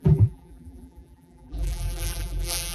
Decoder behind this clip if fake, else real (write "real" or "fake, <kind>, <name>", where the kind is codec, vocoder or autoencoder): fake, vocoder, BigVGAN v2